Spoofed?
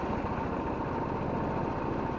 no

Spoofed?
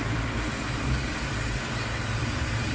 yes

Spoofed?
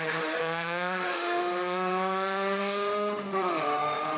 yes